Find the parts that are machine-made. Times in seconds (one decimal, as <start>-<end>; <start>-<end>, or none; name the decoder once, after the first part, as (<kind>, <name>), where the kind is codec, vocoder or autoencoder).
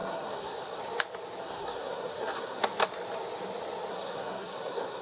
0.0-0.8 (codec, SNAC); 1.4-2.6; 3.9-5.0